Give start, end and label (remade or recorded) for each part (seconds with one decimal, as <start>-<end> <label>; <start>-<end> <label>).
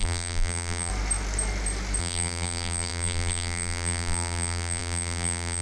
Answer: 0.0-0.9 remade; 0.9-2.0 recorded; 2.0-5.6 remade